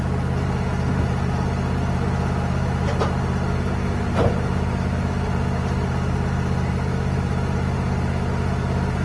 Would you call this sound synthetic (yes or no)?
no